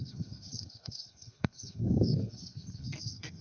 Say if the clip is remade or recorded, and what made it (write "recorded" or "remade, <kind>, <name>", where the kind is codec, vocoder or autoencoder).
remade, codec, SNAC